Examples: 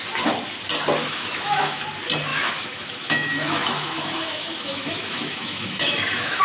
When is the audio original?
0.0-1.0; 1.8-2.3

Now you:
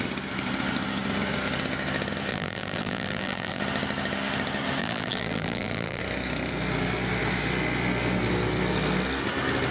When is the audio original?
0.0-2.3; 3.6-4.8; 6.0-9.7

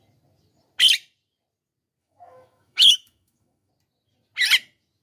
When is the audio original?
0.0-2.0; 3.7-5.0

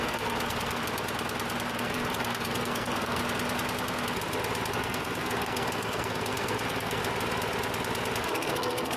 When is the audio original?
0.8-1.7; 3.2-4.7; 7.0-8.2

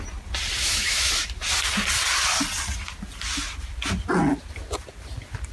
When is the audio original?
0.0-0.6; 1.1-5.5